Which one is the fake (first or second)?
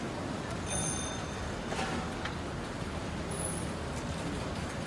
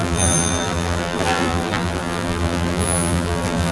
second